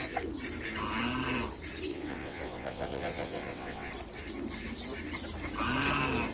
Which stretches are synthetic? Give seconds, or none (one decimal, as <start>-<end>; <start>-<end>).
1.9-3.9